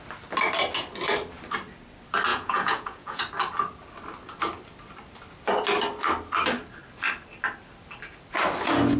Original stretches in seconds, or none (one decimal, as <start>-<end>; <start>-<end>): 0.0-2.3; 3.2-9.0